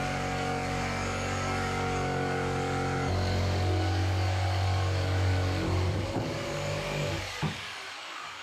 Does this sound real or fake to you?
fake